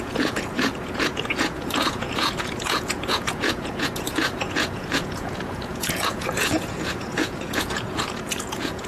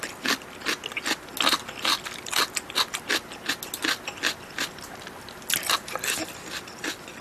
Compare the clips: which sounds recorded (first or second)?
second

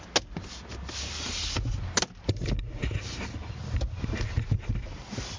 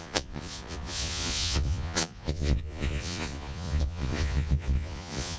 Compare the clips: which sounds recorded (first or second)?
first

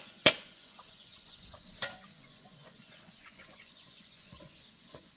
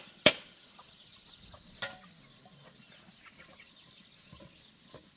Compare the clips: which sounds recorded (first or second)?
second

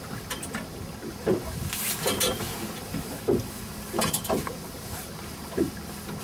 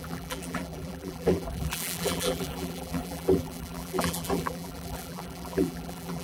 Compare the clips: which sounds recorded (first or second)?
first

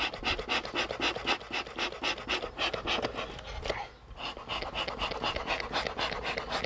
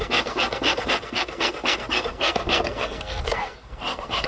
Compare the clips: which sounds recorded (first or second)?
first